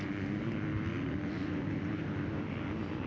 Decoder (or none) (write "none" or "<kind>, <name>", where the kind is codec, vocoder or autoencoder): none